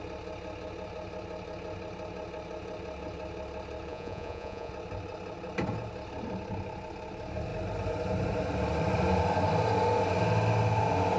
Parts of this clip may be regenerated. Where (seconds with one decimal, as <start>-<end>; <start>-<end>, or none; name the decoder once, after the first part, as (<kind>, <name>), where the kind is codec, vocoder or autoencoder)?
3.9-4.7 (vocoder, Vocos)